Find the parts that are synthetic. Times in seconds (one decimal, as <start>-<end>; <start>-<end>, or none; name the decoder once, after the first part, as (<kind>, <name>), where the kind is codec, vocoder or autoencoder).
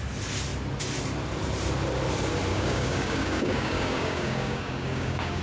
2.5-5.4 (codec, DAC)